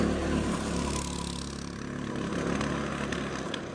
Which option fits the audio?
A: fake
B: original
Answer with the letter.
B